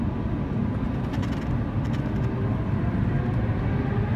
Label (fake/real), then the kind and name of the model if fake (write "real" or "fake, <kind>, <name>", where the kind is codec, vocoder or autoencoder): real